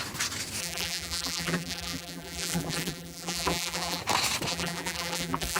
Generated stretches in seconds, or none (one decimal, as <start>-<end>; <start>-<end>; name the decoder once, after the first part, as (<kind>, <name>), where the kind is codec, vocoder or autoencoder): 0.6-4.0 (vocoder, BigVGAN v2); 4.5-5.6